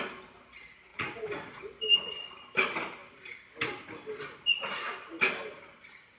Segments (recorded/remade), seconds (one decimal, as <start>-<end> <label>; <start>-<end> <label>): 0.0-0.9 recorded; 0.9-1.6 remade; 1.6-6.2 recorded